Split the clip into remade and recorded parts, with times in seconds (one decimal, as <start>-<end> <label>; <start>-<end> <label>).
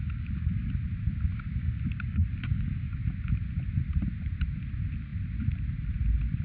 0.0-0.7 remade; 0.7-1.3 recorded; 1.3-3.0 remade; 3.0-6.4 recorded